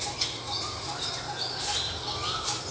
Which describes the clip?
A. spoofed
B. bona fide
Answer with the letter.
B